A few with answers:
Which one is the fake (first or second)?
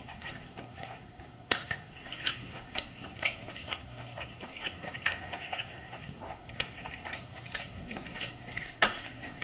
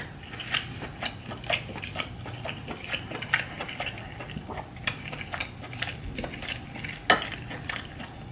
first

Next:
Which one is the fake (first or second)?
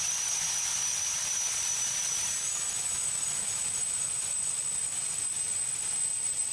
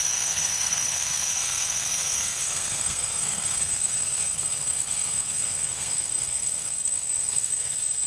second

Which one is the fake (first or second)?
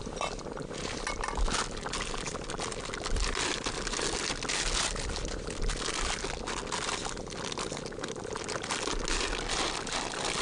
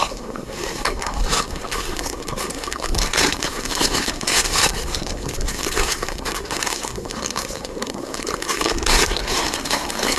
second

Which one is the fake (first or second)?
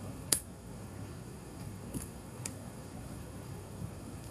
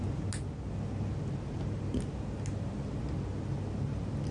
first